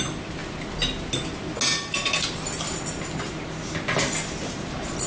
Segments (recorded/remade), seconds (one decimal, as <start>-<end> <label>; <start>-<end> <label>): 0.0-5.1 recorded